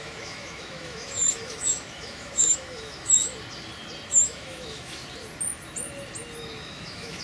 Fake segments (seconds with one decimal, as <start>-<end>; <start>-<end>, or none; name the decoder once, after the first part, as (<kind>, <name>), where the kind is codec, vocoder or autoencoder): 0.0-3.3 (autoencoder, DAC-VAE); 4.1-5.0; 6.4-7.2